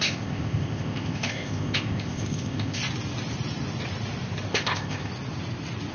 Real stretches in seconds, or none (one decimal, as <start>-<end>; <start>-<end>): 2.8-4.5; 5.1-5.9